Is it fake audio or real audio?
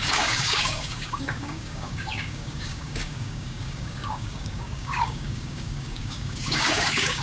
fake